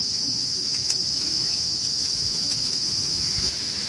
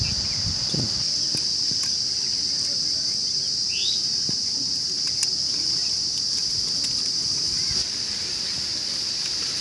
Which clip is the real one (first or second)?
second